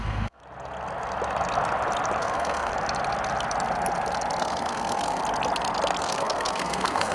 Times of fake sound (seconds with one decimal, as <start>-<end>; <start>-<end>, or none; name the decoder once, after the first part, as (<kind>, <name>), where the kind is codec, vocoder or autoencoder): 0.0-0.4 (codec, SNAC); 2.2-2.7; 4.4-5.2; 6.0-7.1